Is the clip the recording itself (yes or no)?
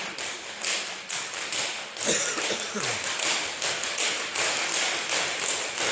yes